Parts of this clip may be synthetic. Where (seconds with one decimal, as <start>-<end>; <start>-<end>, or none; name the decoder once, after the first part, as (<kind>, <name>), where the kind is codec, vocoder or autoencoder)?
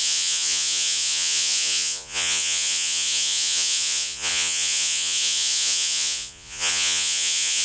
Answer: 0.0-7.6 (vocoder, Vocos)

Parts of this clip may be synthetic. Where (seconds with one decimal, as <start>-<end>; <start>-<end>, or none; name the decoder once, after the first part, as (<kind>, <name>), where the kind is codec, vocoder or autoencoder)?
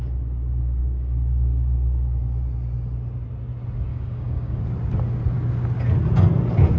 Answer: 0.8-2.4 (codec, DAC); 3.9-4.6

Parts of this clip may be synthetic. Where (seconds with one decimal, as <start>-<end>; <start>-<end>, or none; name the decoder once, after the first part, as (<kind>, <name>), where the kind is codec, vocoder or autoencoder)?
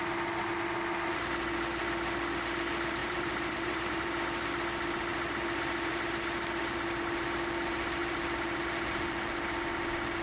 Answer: 3.0-4.0 (vocoder, BigVGAN v2)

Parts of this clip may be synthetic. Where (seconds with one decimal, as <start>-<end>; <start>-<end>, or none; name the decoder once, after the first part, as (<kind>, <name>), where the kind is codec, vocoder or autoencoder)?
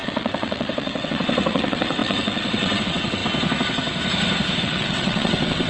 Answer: 0.0-3.2 (vocoder, WaveNeXt); 4.6-5.7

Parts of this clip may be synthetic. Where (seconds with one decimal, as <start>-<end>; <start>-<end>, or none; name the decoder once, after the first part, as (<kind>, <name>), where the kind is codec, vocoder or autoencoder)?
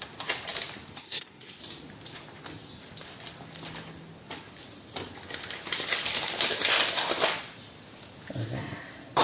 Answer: 1.0-1.6 (codec, HILCodec)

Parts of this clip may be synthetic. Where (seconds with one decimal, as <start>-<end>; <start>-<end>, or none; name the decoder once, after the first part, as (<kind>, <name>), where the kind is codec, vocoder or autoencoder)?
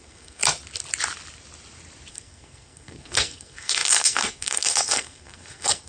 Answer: 0.0-0.4 (codec, SNAC); 2.1-5.9